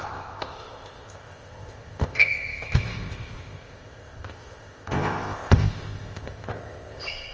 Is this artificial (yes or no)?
yes